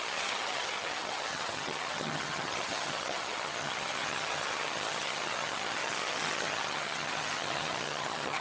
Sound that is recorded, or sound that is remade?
remade